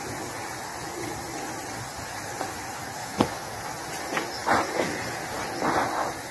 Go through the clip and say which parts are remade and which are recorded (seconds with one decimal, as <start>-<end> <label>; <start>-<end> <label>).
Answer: 0.0-3.0 recorded; 3.0-3.6 remade; 3.6-6.3 recorded